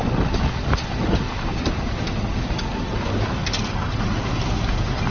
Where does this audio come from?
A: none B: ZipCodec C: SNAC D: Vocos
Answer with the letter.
A